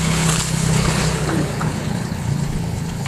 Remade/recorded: remade